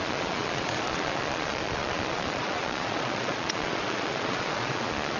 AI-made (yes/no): yes